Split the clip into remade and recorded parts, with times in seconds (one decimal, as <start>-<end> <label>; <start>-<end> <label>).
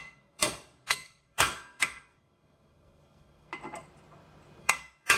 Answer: 0.0-3.5 remade; 3.5-4.6 recorded; 4.6-5.2 remade